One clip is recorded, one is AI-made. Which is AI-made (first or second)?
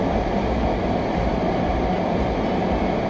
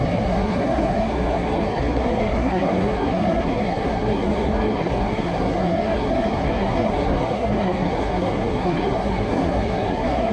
second